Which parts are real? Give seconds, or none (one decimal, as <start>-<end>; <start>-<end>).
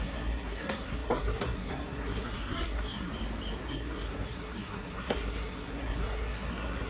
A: 3.1-3.7